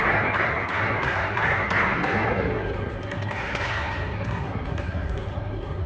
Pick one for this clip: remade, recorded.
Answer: remade